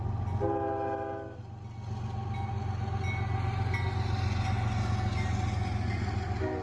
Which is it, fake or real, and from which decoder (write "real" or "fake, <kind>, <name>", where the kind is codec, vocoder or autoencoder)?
real